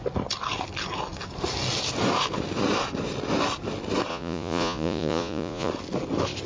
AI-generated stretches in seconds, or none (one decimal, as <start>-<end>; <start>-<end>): 4.1-5.7